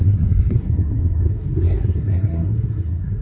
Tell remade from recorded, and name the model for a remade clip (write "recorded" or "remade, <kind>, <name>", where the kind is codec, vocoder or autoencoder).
remade, codec, SNAC